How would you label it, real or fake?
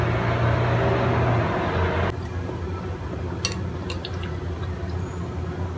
real